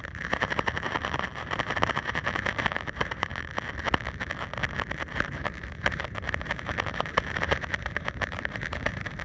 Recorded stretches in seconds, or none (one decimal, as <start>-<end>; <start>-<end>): 3.3-4.9